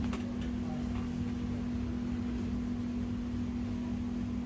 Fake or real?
real